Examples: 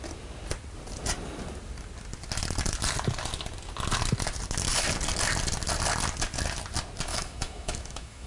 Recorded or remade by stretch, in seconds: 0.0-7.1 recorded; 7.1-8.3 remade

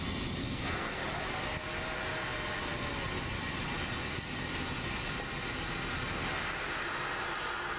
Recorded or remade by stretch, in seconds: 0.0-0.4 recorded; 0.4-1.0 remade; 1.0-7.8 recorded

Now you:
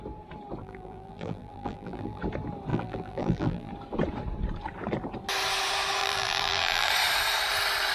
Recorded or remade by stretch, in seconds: 0.0-0.6 recorded; 0.6-2.2 remade; 2.2-2.7 recorded; 2.7-3.7 remade; 3.7-6.0 recorded; 6.0-6.9 remade; 6.9-7.9 recorded